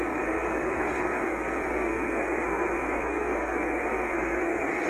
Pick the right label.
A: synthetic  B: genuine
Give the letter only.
A